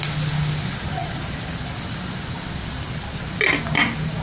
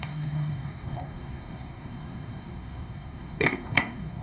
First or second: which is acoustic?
first